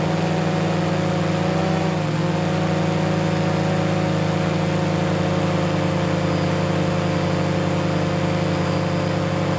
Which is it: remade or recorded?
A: recorded